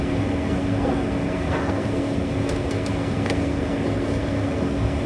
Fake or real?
fake